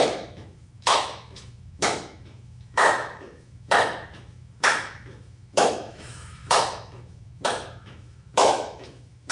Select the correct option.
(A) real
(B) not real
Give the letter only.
B